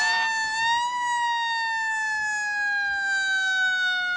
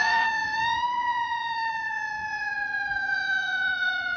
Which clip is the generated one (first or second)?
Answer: second